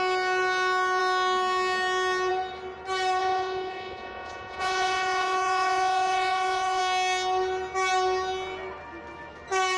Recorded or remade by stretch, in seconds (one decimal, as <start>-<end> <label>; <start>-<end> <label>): 0.0-3.2 recorded; 3.2-6.8 remade; 6.8-9.8 recorded